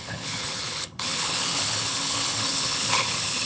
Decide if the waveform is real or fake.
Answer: fake